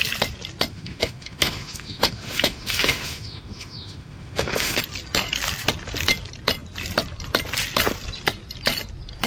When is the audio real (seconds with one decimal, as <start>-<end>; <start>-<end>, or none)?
0.0-0.7; 4.8-9.3